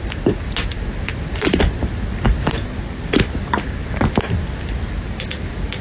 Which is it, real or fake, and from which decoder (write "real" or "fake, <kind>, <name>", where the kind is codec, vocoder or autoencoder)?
real